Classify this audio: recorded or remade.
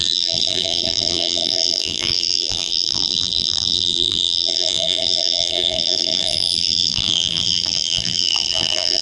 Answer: remade